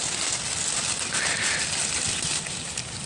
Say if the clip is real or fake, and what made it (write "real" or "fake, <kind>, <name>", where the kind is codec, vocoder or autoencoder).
real